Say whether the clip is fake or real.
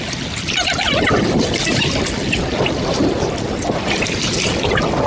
real